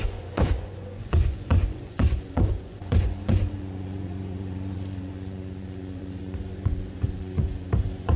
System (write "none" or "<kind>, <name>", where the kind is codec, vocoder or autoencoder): vocoder, Vocos